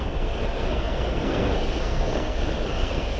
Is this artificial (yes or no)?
yes